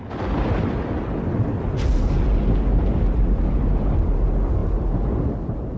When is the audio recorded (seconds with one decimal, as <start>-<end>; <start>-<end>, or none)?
0.0-5.8